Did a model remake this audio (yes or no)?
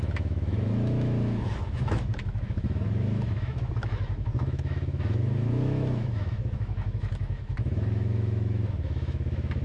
yes